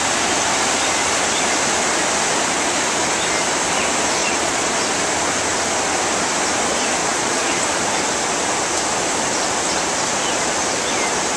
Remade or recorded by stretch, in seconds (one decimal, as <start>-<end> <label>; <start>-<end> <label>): 0.0-4.2 recorded; 4.2-4.7 remade; 4.7-7.0 recorded; 7.0-7.6 remade; 7.6-11.4 recorded